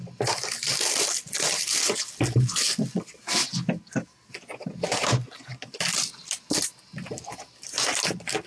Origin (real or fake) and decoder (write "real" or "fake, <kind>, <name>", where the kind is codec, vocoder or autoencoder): real